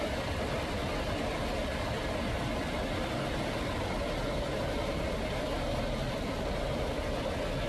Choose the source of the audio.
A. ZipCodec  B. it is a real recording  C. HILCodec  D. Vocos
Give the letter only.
B